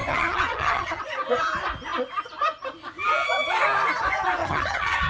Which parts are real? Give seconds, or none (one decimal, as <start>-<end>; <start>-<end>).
1.0-4.4